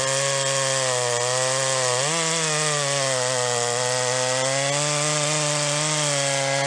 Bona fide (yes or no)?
yes